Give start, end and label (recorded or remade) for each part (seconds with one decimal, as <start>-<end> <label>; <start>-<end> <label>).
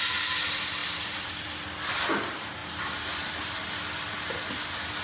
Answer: 0.0-5.0 recorded